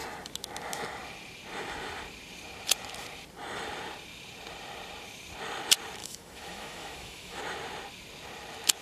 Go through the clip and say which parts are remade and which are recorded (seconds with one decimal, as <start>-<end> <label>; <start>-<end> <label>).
0.0-6.0 recorded; 6.0-7.4 remade; 7.4-8.8 recorded